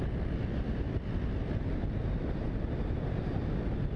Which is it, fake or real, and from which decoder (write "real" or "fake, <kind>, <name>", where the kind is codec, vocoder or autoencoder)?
real